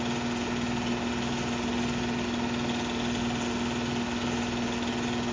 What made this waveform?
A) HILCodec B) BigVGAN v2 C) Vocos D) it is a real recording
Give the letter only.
D